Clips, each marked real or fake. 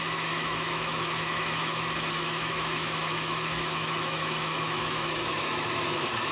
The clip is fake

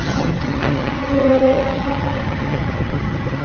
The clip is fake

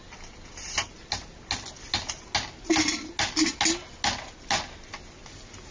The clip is real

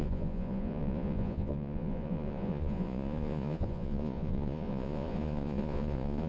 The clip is fake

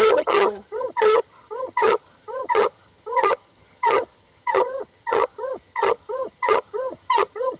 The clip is fake